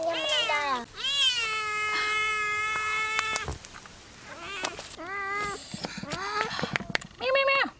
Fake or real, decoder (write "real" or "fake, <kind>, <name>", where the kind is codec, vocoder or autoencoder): real